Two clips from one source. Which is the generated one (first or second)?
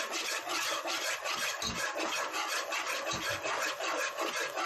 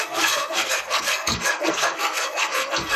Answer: second